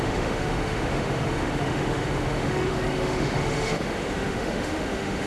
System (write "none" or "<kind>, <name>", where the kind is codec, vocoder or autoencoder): autoencoder, DAC-VAE